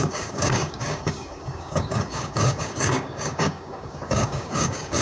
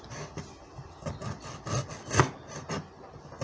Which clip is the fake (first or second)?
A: first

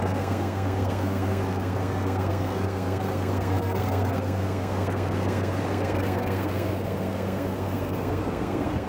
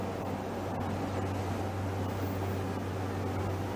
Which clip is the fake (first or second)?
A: first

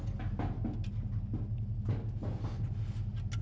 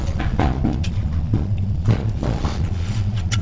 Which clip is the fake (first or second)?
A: second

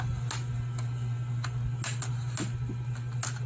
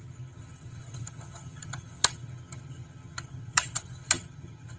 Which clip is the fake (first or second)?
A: second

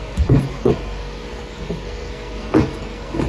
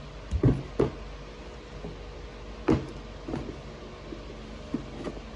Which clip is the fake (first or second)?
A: first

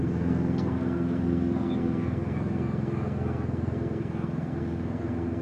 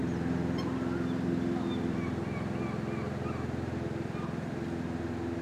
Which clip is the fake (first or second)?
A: first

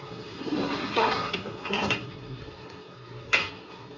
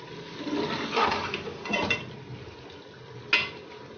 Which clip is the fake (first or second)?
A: first